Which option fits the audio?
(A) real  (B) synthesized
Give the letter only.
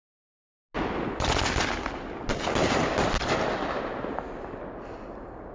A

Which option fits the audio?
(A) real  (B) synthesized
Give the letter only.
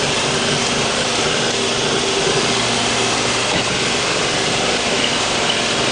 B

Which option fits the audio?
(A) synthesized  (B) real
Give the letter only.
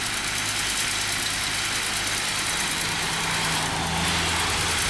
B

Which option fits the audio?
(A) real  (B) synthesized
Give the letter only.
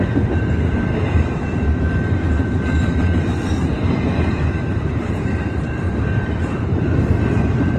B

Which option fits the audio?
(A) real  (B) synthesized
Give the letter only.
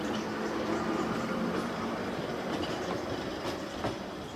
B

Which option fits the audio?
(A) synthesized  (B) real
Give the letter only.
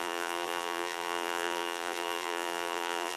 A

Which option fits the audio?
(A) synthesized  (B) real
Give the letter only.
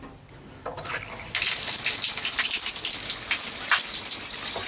B